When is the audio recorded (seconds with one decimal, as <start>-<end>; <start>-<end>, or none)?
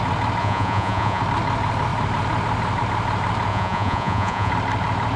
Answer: 0.0-0.4; 1.2-3.5; 4.5-5.2